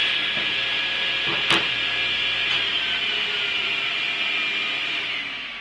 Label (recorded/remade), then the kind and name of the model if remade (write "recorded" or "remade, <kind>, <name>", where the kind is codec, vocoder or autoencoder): recorded